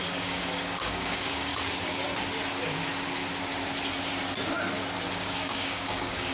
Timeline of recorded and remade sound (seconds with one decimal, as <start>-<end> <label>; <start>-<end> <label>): 0.0-1.5 remade; 1.5-5.1 recorded; 5.1-6.3 remade